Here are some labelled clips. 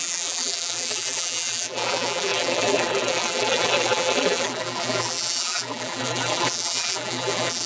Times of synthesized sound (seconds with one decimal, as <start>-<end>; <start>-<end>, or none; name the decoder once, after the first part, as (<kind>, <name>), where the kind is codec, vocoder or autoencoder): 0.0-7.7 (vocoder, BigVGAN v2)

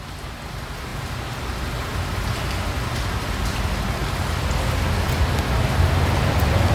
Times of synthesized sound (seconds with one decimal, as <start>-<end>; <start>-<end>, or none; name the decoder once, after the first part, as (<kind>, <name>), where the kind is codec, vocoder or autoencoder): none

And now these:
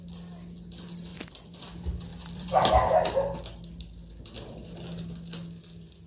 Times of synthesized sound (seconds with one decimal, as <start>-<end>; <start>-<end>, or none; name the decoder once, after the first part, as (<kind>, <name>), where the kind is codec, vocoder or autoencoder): 1.1-1.6 (vocoder, BigVGAN v2); 2.1-2.7

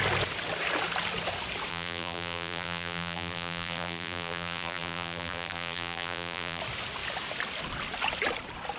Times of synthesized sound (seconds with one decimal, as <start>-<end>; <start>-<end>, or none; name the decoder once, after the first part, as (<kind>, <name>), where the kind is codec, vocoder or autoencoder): 1.7-6.6 (vocoder, BigVGAN v2)